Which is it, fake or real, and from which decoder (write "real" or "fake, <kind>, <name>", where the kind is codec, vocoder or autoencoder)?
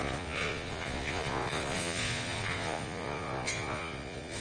fake, vocoder, Vocos